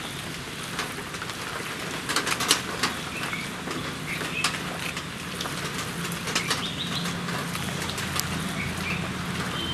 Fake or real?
real